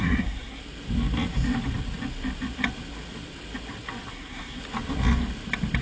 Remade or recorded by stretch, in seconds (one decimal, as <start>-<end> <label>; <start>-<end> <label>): 0.0-0.6 remade; 0.6-4.1 recorded; 4.1-4.6 remade; 4.6-5.8 recorded